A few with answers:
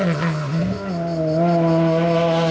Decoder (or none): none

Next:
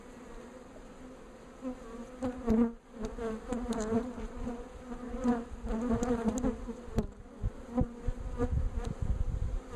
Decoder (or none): none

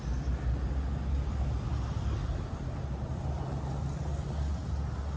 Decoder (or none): none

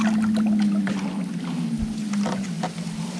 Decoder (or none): none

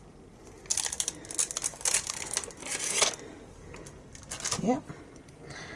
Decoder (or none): none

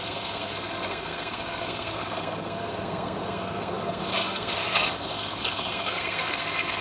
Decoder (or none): codec, SNAC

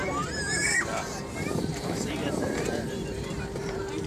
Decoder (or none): vocoder, BigVGAN v2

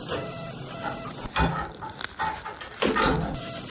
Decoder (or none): none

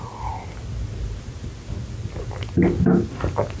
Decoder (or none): none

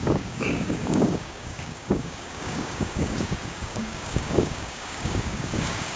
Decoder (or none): codec, DAC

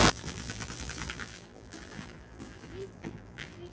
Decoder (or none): vocoder, BigVGAN v2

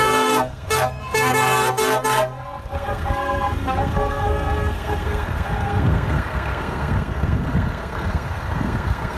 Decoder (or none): codec, SNAC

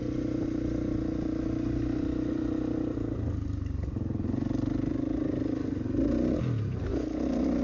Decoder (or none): none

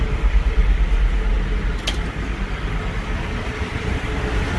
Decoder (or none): none